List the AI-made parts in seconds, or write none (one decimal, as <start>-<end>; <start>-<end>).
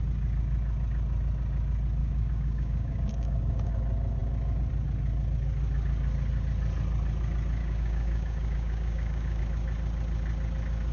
2.0-3.7; 7.6-9.4